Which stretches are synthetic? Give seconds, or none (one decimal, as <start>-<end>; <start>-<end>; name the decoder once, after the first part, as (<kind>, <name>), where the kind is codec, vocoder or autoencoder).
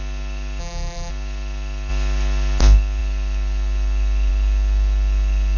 0.6-1.1 (vocoder, BigVGAN v2)